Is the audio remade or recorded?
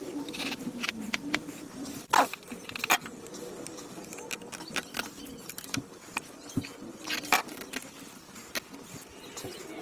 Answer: remade